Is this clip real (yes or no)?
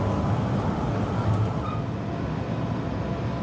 yes